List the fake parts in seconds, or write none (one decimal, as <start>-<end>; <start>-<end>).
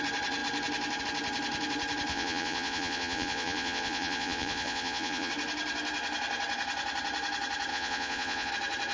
2.1-5.3; 7.7-8.5